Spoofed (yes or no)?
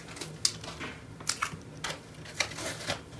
no